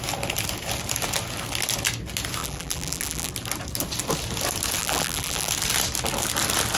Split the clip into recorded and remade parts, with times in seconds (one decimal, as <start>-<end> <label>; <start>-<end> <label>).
0.0-2.4 recorded; 2.4-3.3 remade; 3.3-4.8 recorded; 4.8-5.5 remade; 5.5-6.8 recorded